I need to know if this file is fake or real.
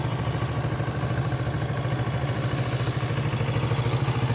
real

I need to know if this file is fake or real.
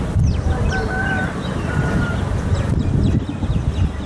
real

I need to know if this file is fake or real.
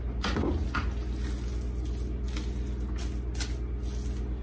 real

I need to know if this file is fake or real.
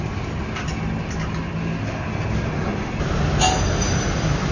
real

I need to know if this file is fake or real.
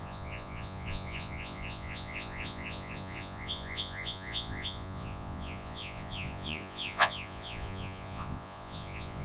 fake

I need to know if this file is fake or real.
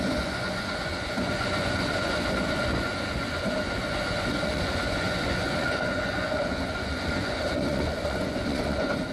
fake